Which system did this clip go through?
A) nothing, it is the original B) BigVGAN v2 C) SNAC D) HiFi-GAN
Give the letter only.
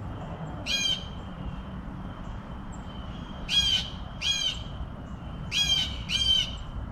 B